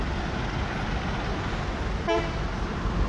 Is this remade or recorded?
recorded